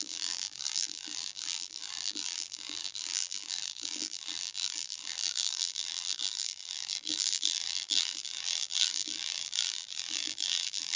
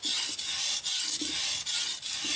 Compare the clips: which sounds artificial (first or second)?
first